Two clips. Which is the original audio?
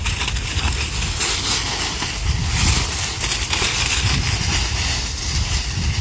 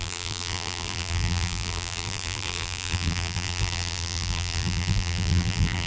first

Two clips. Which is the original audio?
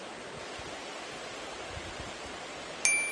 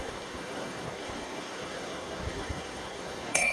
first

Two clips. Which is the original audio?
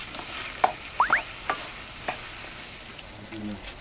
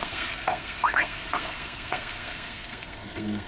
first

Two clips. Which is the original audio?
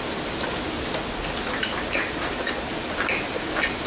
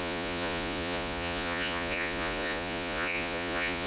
first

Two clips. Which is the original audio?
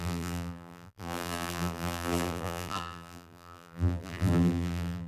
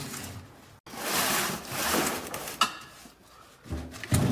second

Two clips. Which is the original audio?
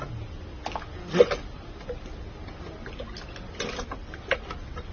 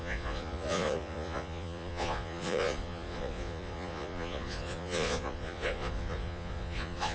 first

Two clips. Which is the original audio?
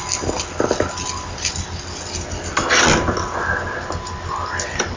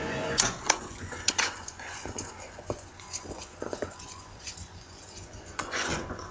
first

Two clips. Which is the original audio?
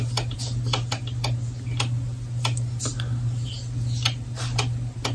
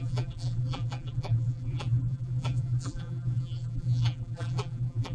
first